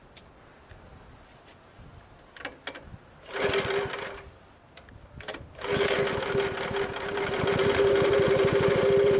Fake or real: real